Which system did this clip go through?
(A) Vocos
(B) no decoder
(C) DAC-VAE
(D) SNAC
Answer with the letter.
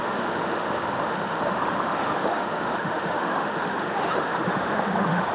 C